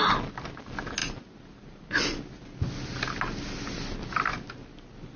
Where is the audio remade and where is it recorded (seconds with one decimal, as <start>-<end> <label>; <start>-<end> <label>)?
0.0-5.2 recorded